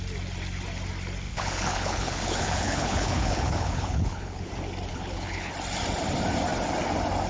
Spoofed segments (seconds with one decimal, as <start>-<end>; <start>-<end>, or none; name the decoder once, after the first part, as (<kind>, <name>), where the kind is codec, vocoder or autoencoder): 1.3-4.5 (codec, HILCodec); 4.9-5.5